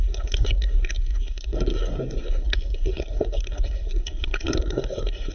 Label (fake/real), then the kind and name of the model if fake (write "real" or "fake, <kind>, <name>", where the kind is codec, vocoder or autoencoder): fake, codec, SNAC